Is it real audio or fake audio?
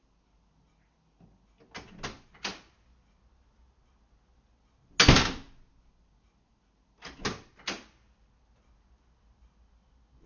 real